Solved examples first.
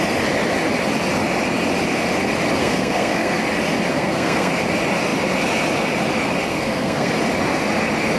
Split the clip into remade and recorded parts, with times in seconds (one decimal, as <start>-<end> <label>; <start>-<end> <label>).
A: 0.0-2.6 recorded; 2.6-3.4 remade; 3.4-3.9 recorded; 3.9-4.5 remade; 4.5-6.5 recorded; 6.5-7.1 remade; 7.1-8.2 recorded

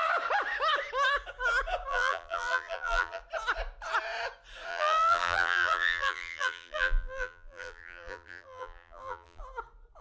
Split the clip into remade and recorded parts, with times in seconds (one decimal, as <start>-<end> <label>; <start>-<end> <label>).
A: 0.0-1.9 recorded; 1.9-3.2 remade; 3.2-4.7 recorded; 4.7-9.4 remade; 9.4-10.0 recorded

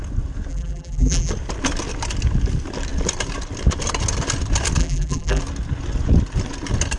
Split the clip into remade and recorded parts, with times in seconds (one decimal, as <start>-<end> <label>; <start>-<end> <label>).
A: 0.0-0.5 recorded; 0.5-1.3 remade; 1.3-4.8 recorded; 4.8-5.4 remade; 5.4-7.0 recorded

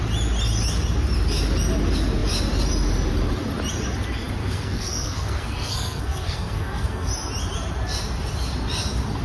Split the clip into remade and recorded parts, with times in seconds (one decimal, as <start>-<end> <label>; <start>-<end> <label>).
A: 0.0-4.4 recorded; 4.4-7.1 remade; 7.1-9.2 recorded

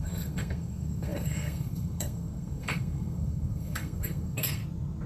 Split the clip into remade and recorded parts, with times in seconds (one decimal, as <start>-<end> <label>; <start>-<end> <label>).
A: 0.0-4.6 remade; 4.6-5.1 recorded